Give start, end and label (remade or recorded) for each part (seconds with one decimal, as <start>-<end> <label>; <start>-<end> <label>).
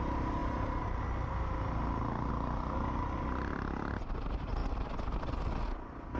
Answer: 0.0-4.6 recorded; 4.6-5.2 remade; 5.2-6.2 recorded